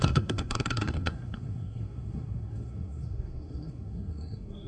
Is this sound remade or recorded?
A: remade